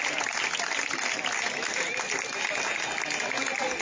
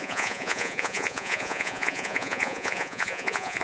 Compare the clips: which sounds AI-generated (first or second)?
second